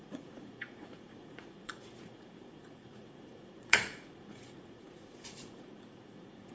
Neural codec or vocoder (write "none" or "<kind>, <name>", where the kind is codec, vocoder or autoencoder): vocoder, Vocos